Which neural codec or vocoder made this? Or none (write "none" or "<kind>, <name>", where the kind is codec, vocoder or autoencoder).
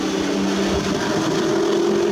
none